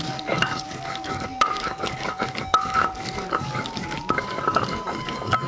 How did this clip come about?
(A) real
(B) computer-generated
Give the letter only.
B